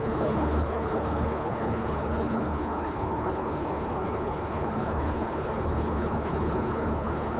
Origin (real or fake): fake